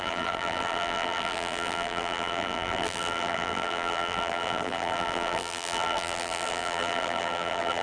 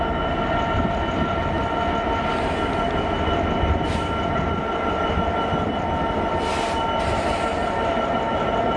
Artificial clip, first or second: first